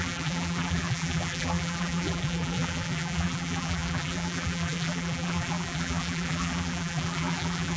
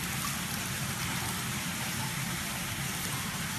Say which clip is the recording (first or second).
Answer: second